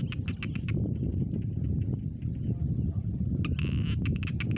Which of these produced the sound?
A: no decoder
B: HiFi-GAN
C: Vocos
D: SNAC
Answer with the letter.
A